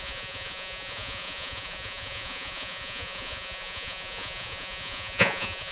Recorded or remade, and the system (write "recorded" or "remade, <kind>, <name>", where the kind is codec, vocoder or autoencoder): remade, vocoder, Vocos